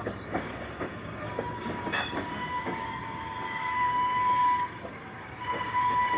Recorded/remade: remade